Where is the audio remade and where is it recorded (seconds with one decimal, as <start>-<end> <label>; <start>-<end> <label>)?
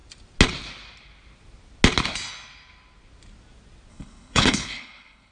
0.0-3.9 recorded; 3.9-5.3 remade